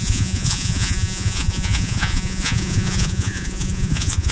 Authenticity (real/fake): fake